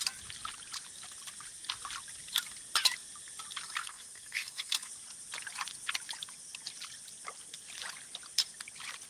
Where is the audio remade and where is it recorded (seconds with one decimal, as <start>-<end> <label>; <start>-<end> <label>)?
0.0-3.8 recorded; 3.8-4.9 remade; 4.9-9.1 recorded

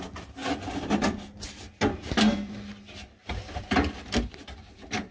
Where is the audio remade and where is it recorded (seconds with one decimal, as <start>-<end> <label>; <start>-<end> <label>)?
0.0-5.1 recorded

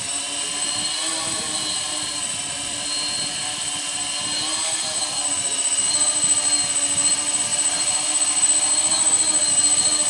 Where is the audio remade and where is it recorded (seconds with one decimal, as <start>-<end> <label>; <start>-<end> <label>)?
0.0-10.1 recorded

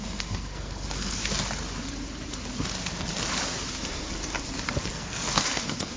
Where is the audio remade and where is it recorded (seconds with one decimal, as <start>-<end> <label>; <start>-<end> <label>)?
0.0-1.2 remade; 1.2-4.8 recorded; 4.8-6.0 remade

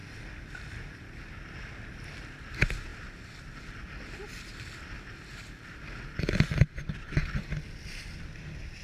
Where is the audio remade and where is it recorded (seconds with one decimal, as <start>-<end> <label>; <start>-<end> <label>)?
0.0-8.8 recorded

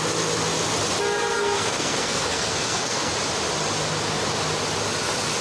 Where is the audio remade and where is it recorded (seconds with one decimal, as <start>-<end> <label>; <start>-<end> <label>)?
0.0-1.3 recorded; 1.3-3.1 remade; 3.1-5.4 recorded

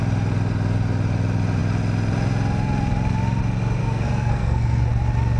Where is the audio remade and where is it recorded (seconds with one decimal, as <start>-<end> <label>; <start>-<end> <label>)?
0.0-3.8 recorded; 3.8-4.9 remade; 4.9-5.4 recorded

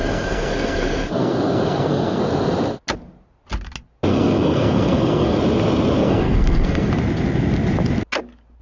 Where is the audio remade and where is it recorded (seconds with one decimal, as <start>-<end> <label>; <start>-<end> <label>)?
0.0-2.2 remade; 2.2-4.1 recorded; 4.1-5.4 remade; 5.4-6.0 recorded; 6.0-6.9 remade; 6.9-8.6 recorded